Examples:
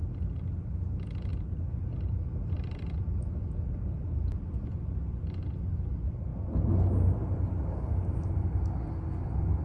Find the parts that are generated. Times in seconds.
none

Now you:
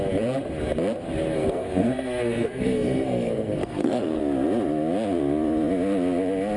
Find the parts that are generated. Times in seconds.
1.3-4.2 (codec, SNAC)

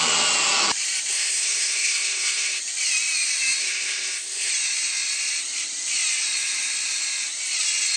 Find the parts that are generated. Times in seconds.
1.1-2.6 (codec, SNAC); 3.6-4.5